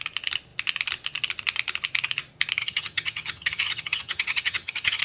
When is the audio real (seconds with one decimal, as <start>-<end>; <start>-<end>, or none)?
0.0-2.6